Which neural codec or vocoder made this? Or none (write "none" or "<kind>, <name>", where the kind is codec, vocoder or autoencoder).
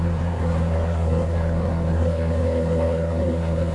codec, SNAC